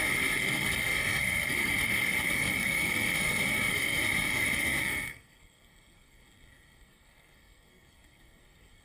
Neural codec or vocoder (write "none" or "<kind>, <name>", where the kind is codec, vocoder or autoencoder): codec, SNAC